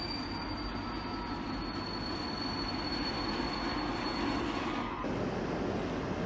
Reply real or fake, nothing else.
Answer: real